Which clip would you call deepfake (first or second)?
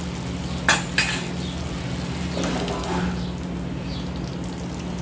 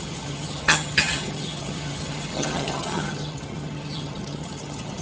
second